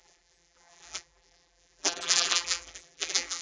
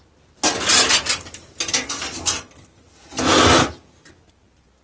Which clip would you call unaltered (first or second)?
second